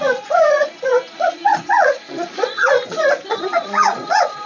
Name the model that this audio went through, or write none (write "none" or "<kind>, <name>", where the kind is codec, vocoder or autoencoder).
vocoder, Vocos